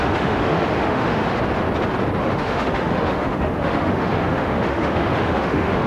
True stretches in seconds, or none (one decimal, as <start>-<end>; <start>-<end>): 1.2-2.2